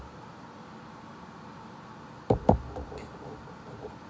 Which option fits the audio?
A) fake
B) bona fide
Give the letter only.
B